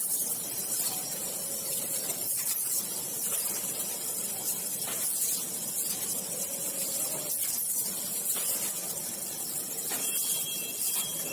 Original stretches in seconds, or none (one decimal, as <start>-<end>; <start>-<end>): 3.2-5.7; 6.5-8.9